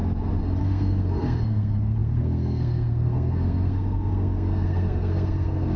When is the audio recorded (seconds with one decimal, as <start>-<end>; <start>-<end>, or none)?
0.0-0.6